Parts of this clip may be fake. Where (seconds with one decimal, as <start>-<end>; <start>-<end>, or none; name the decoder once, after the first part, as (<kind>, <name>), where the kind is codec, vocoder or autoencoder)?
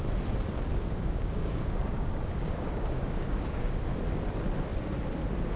0.7-4.0 (codec, DAC)